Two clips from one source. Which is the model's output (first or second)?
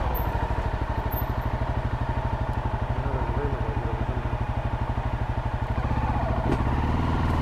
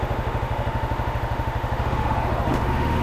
second